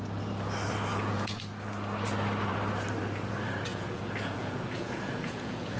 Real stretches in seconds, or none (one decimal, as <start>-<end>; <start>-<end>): 0.0-0.9; 1.4-3.7